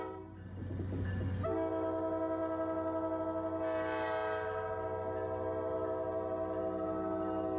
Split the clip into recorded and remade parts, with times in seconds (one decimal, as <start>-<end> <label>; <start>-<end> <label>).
0.0-7.6 recorded